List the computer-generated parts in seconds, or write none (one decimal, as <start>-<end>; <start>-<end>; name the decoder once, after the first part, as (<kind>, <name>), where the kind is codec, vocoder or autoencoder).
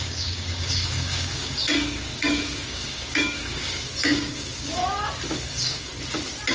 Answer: 0.0-4.8 (codec, DAC); 5.3-5.9